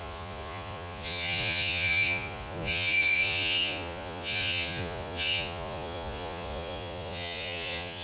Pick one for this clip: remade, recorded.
remade